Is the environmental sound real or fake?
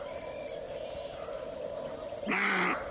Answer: real